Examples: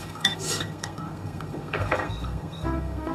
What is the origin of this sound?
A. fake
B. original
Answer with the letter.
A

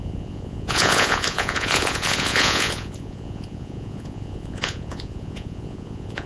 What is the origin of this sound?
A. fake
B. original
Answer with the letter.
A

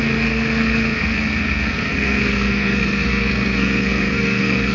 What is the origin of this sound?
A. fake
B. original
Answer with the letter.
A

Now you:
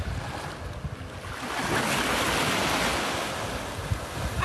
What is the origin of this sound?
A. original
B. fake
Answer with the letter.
A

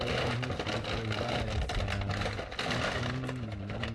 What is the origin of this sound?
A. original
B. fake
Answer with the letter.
A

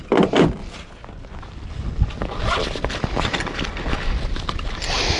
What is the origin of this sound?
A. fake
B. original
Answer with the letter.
B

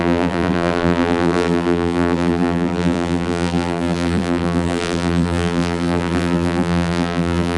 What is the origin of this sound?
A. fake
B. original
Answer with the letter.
A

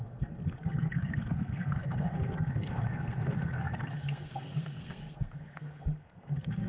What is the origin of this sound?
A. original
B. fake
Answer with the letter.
B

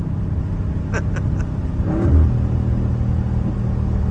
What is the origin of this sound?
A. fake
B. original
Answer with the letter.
B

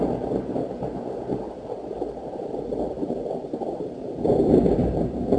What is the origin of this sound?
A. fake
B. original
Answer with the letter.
A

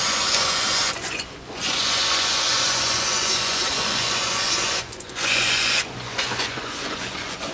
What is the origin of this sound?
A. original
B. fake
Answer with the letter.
B